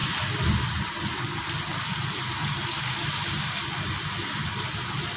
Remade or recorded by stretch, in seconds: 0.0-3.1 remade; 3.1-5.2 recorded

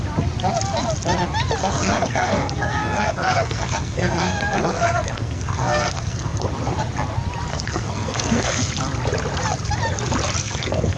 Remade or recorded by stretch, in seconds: 0.0-1.6 recorded; 1.6-6.5 remade; 6.5-7.5 recorded; 7.5-8.7 remade; 8.7-10.4 recorded; 10.4-11.0 remade

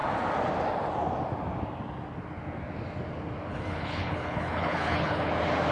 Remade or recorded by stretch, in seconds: 0.0-3.5 recorded; 3.5-5.3 remade; 5.3-5.7 recorded

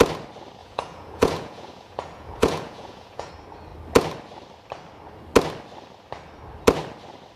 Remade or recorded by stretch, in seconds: 0.0-0.6 recorded; 0.6-3.3 remade; 3.3-7.4 recorded

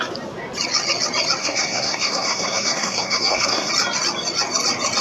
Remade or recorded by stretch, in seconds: 0.0-1.4 recorded; 1.4-3.7 remade; 3.7-5.0 recorded